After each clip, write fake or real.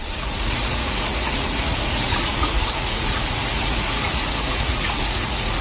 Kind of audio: fake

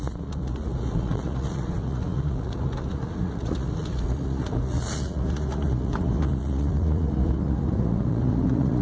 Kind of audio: fake